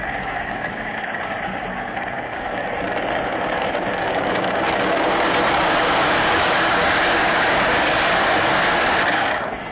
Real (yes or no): no